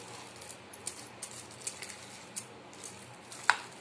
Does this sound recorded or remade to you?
recorded